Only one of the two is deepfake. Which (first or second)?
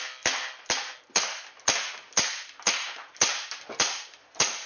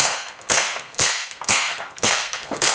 second